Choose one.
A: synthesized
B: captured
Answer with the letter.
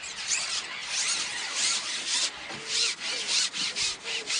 B